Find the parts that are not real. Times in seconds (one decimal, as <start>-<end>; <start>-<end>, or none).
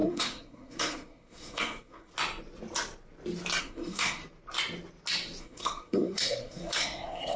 0.0-2.1; 3.6-4.2; 5.4-7.4